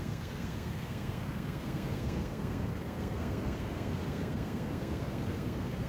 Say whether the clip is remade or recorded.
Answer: remade